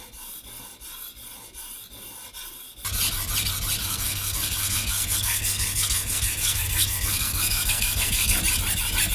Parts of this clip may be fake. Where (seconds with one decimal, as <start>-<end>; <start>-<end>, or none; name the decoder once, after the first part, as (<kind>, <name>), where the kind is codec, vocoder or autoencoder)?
3.8-8.4 (codec, SNAC)